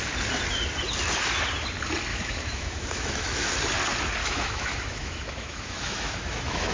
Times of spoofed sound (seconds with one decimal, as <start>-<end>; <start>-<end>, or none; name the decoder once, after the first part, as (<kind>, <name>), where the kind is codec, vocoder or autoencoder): 2.1-3.5 (autoencoder, DAC-VAE); 4.2-6.7

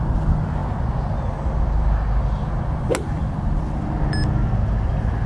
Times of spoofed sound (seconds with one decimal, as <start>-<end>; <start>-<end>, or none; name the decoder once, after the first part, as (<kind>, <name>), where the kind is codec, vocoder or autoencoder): none

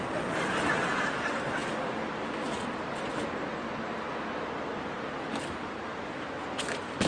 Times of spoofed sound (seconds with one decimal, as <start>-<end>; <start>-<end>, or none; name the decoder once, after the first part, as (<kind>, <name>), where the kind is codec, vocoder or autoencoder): none